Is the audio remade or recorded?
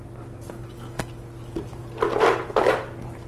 recorded